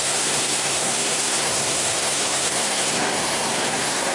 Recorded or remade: remade